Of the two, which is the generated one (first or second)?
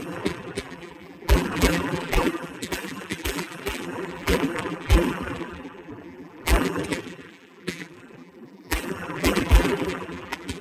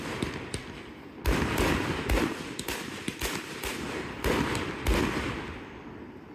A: first